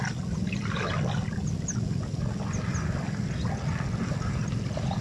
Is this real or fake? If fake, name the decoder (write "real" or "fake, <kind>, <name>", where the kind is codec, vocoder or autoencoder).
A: real